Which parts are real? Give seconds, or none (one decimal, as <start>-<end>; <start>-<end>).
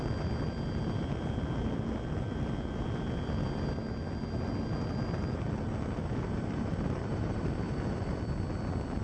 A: 0.0-6.0; 8.2-9.0